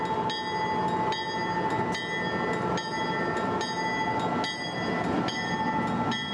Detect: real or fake real